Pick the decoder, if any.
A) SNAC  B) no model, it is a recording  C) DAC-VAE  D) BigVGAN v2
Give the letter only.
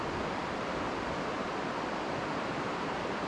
B